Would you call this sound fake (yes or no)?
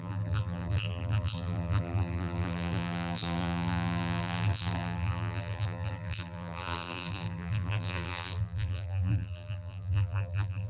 yes